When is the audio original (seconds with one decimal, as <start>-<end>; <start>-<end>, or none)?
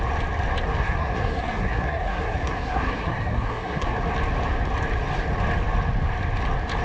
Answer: 0.0-0.8; 4.0-6.8